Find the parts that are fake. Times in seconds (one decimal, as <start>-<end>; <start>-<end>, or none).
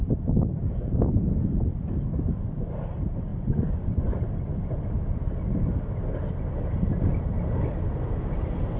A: 3.3-4.1